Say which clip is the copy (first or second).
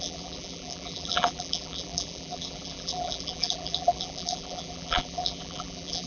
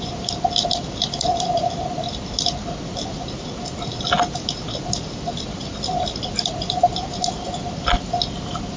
first